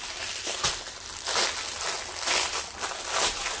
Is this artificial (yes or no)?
no